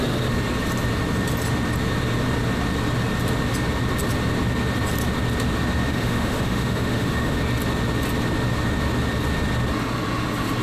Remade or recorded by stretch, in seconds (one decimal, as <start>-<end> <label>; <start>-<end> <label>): 0.0-5.9 recorded; 5.9-7.4 remade; 7.4-10.6 recorded